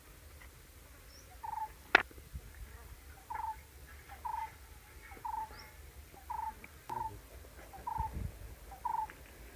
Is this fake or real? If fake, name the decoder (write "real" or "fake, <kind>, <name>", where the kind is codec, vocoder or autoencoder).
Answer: real